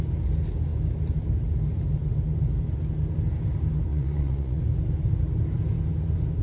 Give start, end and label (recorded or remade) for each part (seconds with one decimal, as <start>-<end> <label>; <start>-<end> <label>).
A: 0.0-3.9 recorded; 3.9-4.6 remade; 4.6-6.4 recorded